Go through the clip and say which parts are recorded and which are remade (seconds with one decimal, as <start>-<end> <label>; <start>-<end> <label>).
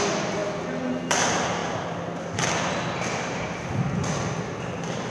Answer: 0.0-5.1 recorded